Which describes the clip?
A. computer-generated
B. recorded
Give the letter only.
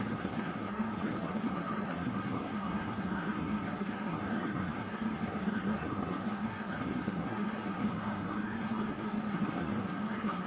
A